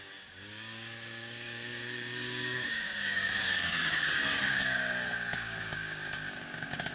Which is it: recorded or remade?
remade